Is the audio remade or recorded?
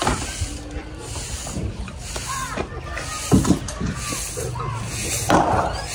recorded